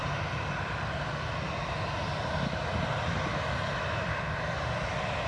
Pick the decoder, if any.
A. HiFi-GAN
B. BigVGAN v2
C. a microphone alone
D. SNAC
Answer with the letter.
C